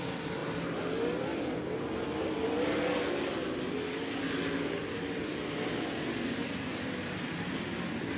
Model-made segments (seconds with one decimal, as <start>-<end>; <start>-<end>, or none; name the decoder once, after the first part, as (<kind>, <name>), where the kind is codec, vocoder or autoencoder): none

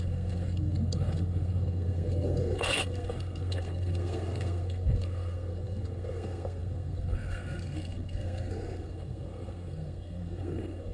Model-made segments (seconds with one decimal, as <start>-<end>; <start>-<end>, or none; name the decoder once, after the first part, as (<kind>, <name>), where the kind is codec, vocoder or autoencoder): 0.0-10.9 (codec, SNAC)

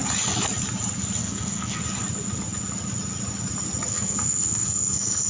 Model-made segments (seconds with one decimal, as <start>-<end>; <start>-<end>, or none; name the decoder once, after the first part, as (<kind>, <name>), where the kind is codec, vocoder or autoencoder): 1.2-1.8 (codec, SNAC); 3.9-5.3

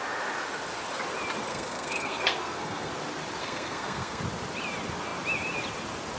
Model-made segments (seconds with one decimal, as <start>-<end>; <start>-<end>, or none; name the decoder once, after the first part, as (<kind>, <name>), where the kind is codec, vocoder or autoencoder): 1.5-2.9 (codec, SNAC); 3.4-4.2

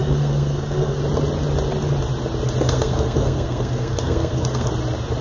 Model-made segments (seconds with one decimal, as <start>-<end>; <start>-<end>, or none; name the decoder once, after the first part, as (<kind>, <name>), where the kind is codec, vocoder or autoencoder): 0.0-1.0 (codec, SNAC); 2.6-4.7

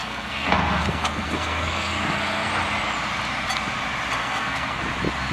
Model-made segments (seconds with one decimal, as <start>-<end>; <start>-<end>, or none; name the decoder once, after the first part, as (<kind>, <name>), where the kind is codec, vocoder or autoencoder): 0.0-2.5 (codec, SNAC); 4.2-4.8

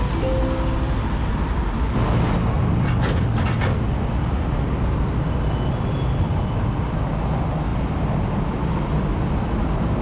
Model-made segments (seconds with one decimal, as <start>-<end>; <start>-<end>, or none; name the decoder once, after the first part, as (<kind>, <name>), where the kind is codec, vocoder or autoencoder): none

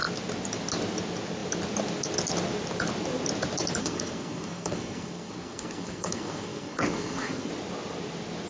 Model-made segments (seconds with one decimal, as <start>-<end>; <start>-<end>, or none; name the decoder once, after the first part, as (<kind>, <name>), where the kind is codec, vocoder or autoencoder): 3.8-7.5 (codec, SNAC)